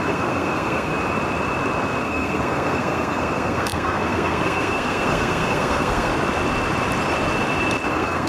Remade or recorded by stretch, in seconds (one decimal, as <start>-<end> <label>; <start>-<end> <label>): 0.0-0.9 remade; 0.9-2.0 recorded; 2.0-6.1 remade; 6.1-7.9 recorded; 7.9-8.3 remade